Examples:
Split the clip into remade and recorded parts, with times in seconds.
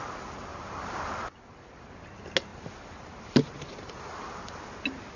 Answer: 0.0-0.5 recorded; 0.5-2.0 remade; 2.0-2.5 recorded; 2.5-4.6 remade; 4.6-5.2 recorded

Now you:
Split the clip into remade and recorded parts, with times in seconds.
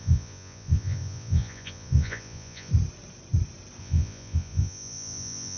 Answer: 0.0-2.7 remade; 2.7-3.8 recorded; 3.8-5.6 remade